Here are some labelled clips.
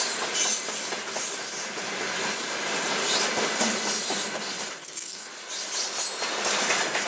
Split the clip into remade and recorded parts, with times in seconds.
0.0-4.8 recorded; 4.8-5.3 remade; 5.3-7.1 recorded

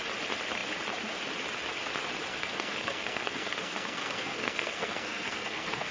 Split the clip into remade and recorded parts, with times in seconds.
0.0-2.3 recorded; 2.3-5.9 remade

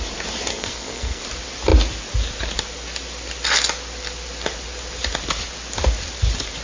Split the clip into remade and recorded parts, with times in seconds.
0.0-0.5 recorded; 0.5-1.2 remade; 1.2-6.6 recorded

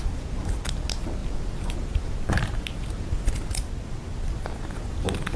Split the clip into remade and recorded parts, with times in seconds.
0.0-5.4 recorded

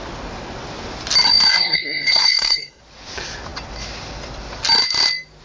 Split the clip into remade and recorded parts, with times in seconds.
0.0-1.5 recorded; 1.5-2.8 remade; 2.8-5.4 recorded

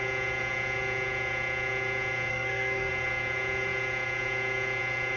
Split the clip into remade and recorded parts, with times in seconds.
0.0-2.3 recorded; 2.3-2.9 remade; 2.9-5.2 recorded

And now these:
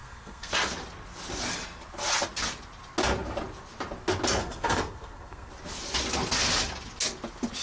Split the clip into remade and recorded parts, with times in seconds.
0.0-0.5 remade; 0.5-4.4 recorded; 4.4-5.5 remade; 5.5-7.6 recorded